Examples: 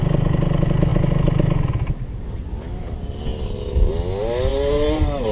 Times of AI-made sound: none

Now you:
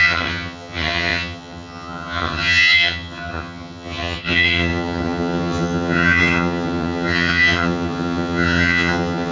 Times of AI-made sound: 0.0-9.3 (vocoder, HiFi-GAN)

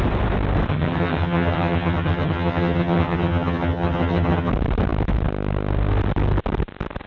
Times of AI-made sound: 0.7-4.5 (vocoder, HiFi-GAN)

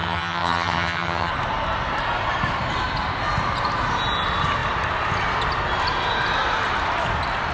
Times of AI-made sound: 0.0-1.3 (vocoder, HiFi-GAN)

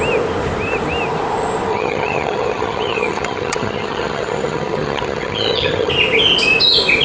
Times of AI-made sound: 1.7-5.9 (vocoder, HiFi-GAN)